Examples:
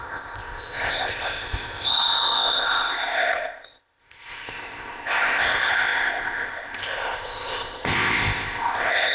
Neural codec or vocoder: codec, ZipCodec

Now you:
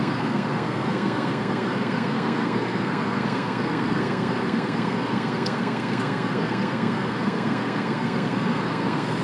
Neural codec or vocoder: codec, SNAC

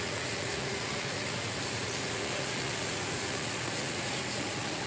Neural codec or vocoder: vocoder, Vocos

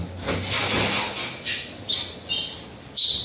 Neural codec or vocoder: none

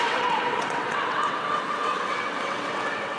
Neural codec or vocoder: vocoder, WaveNeXt